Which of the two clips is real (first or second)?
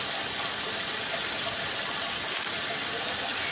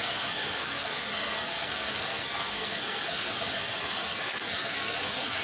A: first